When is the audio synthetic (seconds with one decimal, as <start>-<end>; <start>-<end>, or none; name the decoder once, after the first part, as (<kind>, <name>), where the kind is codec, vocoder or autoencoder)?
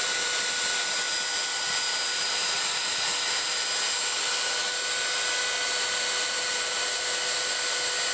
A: none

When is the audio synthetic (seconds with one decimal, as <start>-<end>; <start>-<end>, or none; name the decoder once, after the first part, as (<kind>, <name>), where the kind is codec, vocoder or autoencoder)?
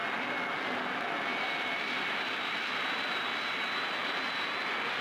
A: 1.3-4.3 (vocoder, BigVGAN v2)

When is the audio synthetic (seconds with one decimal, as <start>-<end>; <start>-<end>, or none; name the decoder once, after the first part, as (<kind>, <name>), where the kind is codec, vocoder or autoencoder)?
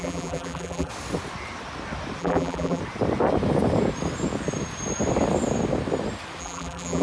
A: 0.0-0.9 (vocoder, BigVGAN v2); 2.2-2.8; 6.4-7.0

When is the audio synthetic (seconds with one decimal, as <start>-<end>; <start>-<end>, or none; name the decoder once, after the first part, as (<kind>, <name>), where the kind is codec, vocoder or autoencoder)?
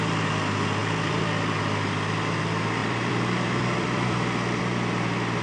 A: 0.8-1.6 (vocoder, BigVGAN v2); 2.8-4.6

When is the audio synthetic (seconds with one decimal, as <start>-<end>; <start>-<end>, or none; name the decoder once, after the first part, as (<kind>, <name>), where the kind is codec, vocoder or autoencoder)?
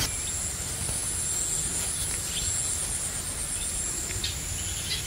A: none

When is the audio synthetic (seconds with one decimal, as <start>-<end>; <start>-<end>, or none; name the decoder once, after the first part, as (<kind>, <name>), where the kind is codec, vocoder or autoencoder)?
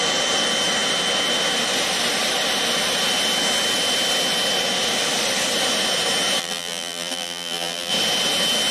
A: 6.4-7.9 (vocoder, BigVGAN v2)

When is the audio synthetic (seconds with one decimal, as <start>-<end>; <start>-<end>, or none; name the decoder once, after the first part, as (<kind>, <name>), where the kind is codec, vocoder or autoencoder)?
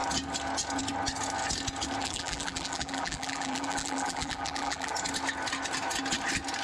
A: 2.0-4.9 (vocoder, BigVGAN v2)